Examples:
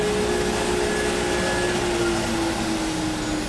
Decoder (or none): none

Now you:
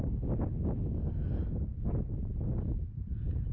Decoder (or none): none